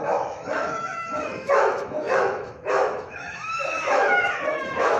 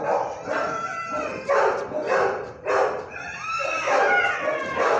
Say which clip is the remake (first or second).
first